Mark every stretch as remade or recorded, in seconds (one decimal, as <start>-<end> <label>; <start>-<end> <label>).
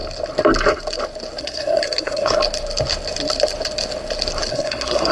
0.0-1.4 recorded; 1.4-2.4 remade; 2.4-4.5 recorded; 4.5-5.1 remade